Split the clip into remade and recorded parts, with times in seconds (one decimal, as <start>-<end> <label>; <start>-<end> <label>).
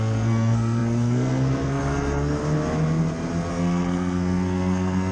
0.0-2.4 remade; 2.4-3.5 recorded; 3.5-5.1 remade